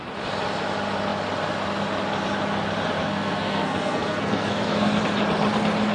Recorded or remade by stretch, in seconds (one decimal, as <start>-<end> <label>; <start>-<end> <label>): 0.0-3.0 recorded; 3.0-5.0 remade; 5.0-5.9 recorded